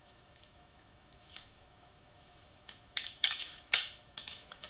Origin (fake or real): fake